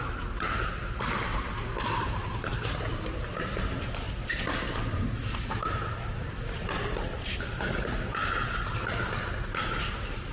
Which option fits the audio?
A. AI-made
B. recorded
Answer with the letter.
B